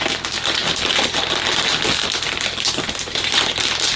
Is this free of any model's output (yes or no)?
yes